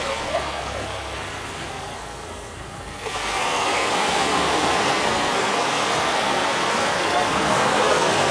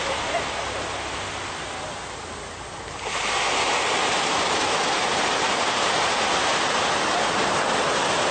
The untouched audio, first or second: second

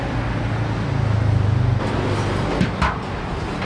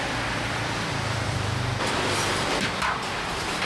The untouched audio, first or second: first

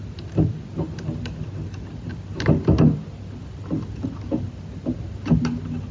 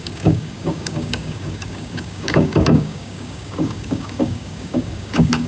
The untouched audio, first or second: first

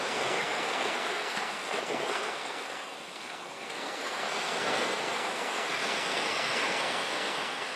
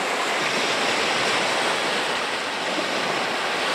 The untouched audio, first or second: second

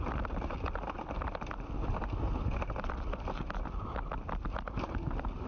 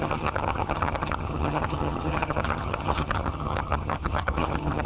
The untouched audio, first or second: first